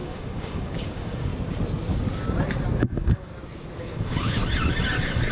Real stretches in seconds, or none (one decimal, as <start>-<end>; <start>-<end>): 1.3-2.8; 3.3-3.8; 4.4-5.3